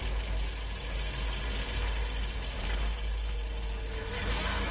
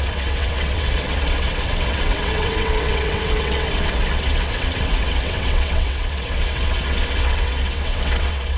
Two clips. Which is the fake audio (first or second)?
second